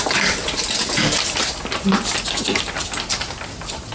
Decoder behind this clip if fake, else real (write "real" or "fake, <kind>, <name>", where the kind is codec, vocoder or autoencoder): real